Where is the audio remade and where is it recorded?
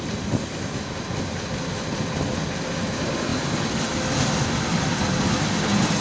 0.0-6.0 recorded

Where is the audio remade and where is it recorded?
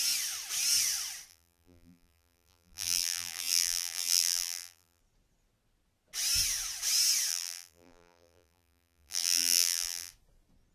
0.0-1.3 recorded; 1.3-5.0 remade; 5.0-7.3 recorded; 7.3-10.1 remade; 10.1-10.7 recorded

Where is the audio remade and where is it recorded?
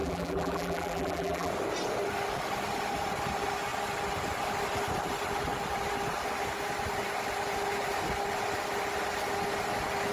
0.0-1.5 remade; 1.5-10.1 recorded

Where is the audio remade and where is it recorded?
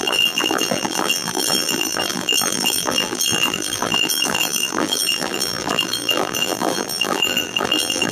0.0-8.1 remade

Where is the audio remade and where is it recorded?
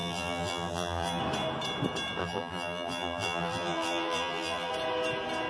0.0-1.2 remade; 1.2-2.2 recorded; 2.2-4.7 remade; 4.7-5.5 recorded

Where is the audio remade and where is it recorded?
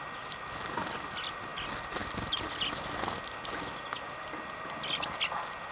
0.0-5.7 recorded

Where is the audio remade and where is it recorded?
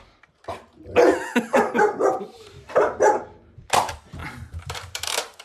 0.0-1.5 recorded; 1.5-3.2 remade; 3.2-4.2 recorded; 4.2-5.4 remade